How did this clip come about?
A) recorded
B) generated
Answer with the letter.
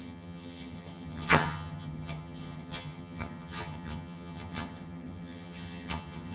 B